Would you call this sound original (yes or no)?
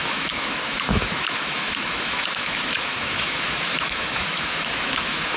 no